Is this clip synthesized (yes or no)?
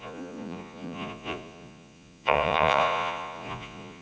yes